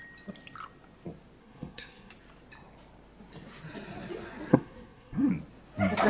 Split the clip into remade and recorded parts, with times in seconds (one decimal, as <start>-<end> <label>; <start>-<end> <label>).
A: 0.0-1.4 recorded; 1.4-2.1 remade; 2.1-4.5 recorded; 4.5-5.3 remade; 5.3-6.1 recorded